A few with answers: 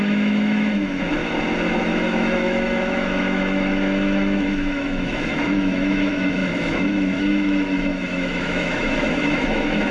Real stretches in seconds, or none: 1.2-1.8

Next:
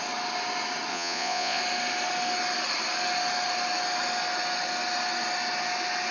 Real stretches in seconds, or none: 0.0-0.9; 1.6-6.1

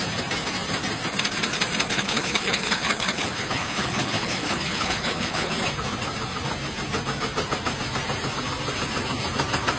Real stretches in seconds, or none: 0.0-1.9; 5.5-9.8

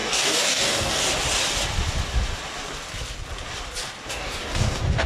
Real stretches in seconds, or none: 1.0-4.1